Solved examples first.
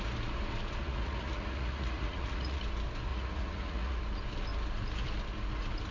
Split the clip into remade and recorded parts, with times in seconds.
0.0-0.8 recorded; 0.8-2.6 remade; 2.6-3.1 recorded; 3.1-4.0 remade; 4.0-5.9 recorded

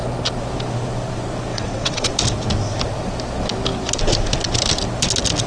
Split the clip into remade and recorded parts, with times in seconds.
0.0-1.5 recorded; 1.5-2.1 remade; 2.1-5.5 recorded

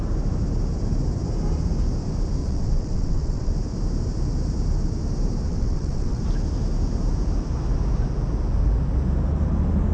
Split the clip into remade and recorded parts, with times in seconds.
0.0-2.4 recorded; 2.4-3.5 remade; 3.5-5.5 recorded; 5.5-6.2 remade; 6.2-9.9 recorded

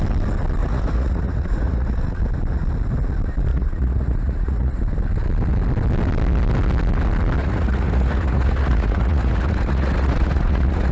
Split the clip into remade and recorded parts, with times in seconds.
0.0-0.6 recorded; 0.6-2.2 remade; 2.2-3.5 recorded; 3.5-4.8 remade; 4.8-7.4 recorded; 7.4-10.9 remade